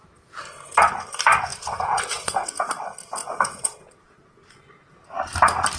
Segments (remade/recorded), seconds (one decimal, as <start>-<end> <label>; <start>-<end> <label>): 0.0-1.5 recorded; 1.5-2.7 remade; 2.7-3.2 recorded; 3.2-4.4 remade; 4.4-5.8 recorded